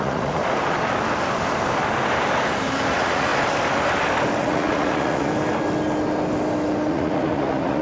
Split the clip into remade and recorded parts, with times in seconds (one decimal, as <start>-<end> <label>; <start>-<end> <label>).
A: 0.0-0.4 remade; 0.4-2.9 recorded; 2.9-3.3 remade; 3.3-4.4 recorded; 4.4-5.3 remade; 5.3-6.9 recorded; 6.9-7.8 remade